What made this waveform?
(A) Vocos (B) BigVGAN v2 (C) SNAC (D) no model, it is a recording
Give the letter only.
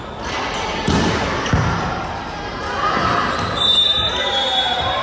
D